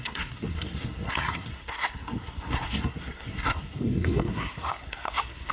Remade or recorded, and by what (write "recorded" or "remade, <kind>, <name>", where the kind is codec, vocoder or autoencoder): remade, codec, SNAC